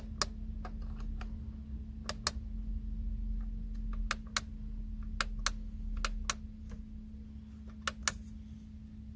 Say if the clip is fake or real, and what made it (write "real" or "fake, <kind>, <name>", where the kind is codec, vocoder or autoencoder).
real